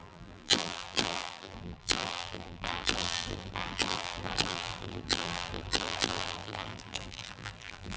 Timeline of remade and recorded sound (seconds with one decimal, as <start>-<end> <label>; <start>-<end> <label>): 0.0-8.0 remade